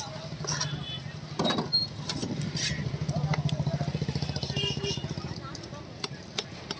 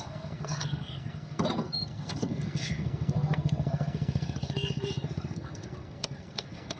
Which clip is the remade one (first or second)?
second